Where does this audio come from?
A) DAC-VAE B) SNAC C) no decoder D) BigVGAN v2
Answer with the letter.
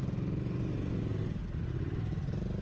C